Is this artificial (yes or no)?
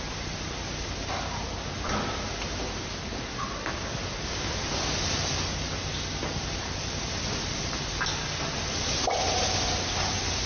no